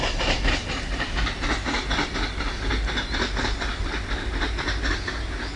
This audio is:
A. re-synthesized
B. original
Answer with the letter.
B